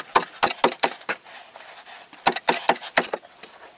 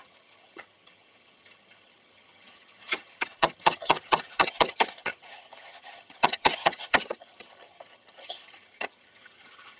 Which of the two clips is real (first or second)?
first